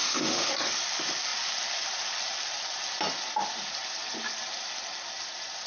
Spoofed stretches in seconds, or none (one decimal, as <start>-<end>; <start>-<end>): 0.0-0.5